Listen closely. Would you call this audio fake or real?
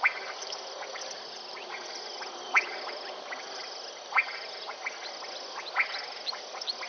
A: real